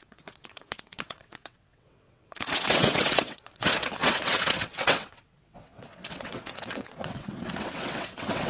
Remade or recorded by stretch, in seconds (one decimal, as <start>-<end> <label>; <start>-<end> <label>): 0.0-8.5 remade